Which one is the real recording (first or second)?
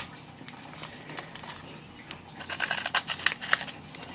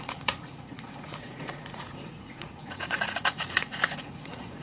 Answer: first